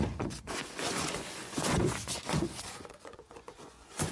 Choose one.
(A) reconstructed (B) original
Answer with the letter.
A